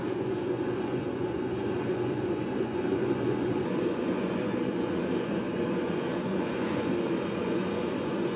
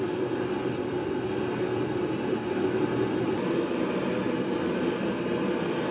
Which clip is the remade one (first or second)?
first